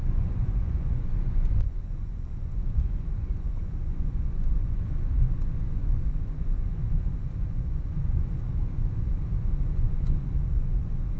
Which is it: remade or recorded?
remade